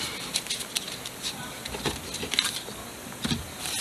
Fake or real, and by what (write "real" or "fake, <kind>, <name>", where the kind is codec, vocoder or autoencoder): real